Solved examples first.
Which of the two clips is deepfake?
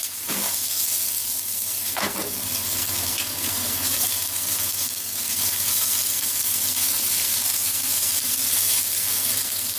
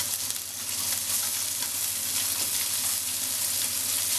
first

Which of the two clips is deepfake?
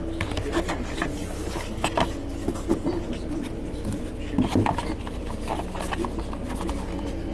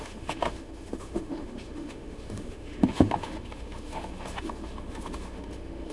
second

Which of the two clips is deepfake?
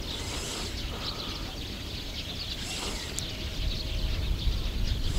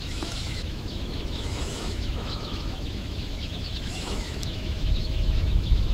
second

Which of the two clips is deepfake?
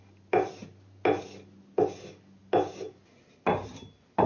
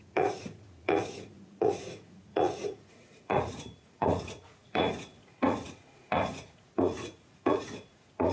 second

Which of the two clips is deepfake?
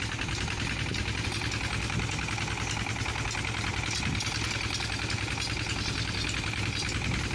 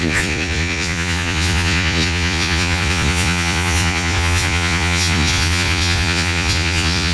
second